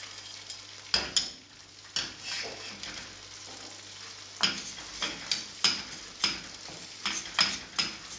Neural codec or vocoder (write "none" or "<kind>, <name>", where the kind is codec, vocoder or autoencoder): none